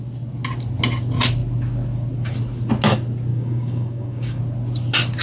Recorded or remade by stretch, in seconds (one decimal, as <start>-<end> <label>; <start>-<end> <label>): 0.0-3.3 recorded; 3.3-4.4 remade; 4.4-5.2 recorded